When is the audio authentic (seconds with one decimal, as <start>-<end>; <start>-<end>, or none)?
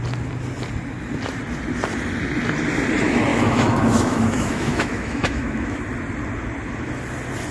0.0-3.3; 5.8-7.5